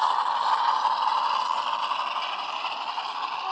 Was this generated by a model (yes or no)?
no